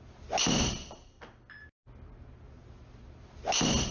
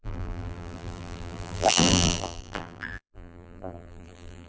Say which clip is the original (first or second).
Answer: first